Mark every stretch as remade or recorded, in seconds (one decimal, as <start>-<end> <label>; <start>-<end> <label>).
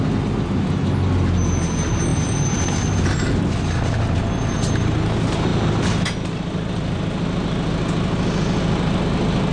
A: 0.0-2.1 recorded; 2.1-3.4 remade; 3.4-9.5 recorded